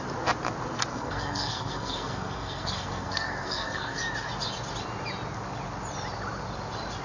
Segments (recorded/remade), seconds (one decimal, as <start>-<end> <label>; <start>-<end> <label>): 0.0-0.9 recorded; 0.9-4.0 remade; 4.0-7.0 recorded